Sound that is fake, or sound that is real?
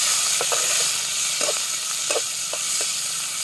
real